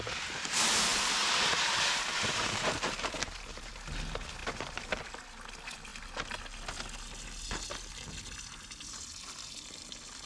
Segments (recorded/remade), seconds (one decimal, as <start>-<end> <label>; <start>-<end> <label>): 0.0-0.9 recorded; 0.9-3.7 remade; 3.7-10.3 recorded